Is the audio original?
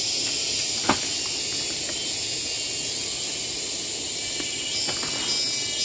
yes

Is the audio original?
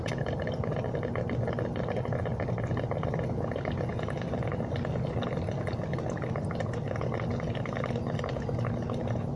yes